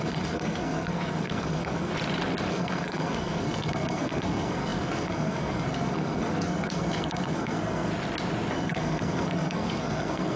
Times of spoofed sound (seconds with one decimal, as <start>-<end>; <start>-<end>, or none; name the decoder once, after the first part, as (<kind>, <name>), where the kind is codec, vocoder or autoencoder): 0.0-1.9 (codec, SNAC); 2.5-7.9; 8.5-10.4